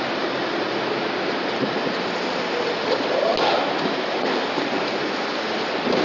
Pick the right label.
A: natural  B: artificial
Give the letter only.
A